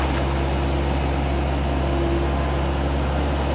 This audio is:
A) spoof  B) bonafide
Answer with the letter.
B